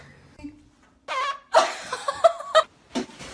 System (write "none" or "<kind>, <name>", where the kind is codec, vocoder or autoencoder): none